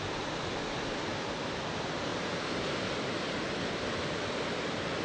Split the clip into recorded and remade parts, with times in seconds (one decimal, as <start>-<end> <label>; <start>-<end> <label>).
0.0-5.0 recorded